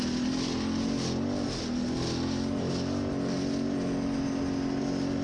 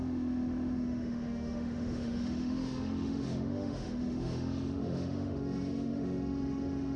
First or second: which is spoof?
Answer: second